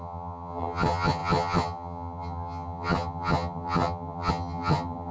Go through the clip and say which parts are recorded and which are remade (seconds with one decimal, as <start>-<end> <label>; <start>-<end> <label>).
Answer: 0.0-5.1 remade

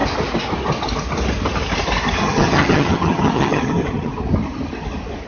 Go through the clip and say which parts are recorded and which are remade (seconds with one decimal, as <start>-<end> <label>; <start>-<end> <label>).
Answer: 0.0-2.2 recorded; 2.2-4.1 remade; 4.1-5.3 recorded